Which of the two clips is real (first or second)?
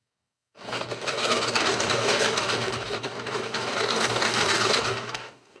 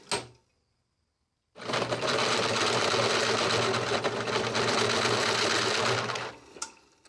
second